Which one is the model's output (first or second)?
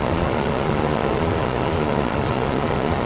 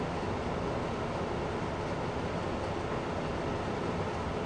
first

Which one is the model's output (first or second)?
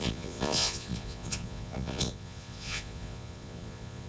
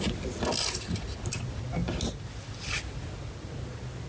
first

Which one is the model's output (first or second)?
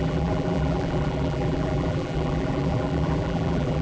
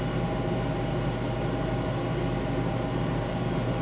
first